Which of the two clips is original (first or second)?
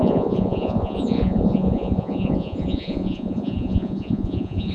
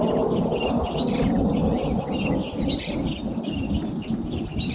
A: second